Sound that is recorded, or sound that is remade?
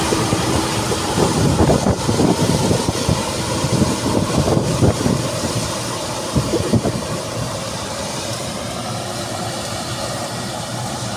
remade